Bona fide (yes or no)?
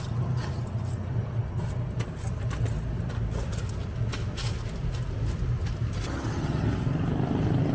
yes